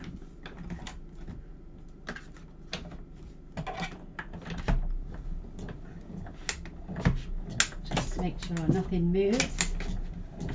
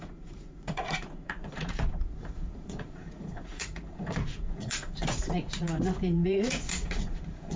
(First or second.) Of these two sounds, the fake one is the second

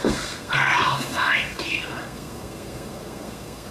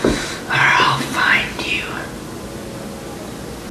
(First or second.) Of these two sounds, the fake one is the first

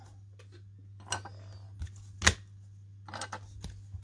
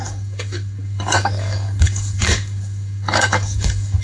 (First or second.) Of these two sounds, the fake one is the second